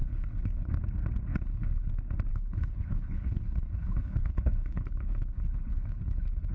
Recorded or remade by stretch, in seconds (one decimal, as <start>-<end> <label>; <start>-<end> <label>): 0.0-0.7 remade; 0.7-1.3 recorded; 1.3-1.9 remade; 1.9-2.3 recorded; 2.3-6.5 remade